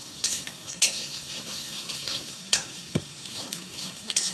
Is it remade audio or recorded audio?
remade